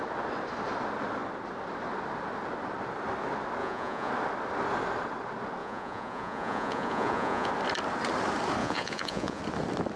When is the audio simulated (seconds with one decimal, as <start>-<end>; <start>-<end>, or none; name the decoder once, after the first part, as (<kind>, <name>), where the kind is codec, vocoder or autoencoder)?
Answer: 3.6-4.1 (vocoder, Vocos); 5.6-7.5; 8.6-9.4